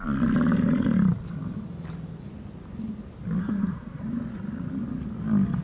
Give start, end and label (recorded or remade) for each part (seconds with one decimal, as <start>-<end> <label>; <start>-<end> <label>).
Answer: 0.0-3.4 recorded; 3.4-4.0 remade; 4.0-5.6 recorded